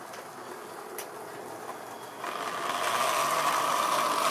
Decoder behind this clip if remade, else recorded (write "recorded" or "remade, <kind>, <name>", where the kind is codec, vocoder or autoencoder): recorded